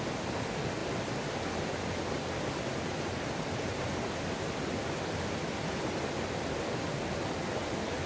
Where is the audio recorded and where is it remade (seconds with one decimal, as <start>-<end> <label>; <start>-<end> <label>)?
0.0-8.1 recorded